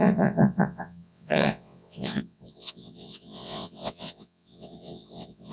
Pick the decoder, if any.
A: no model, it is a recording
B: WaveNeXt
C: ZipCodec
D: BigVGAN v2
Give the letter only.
B